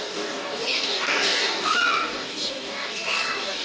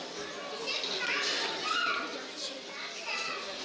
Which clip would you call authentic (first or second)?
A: second